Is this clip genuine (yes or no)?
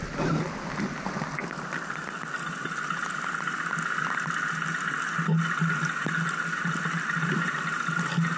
yes